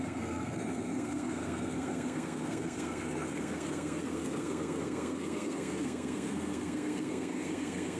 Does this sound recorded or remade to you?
remade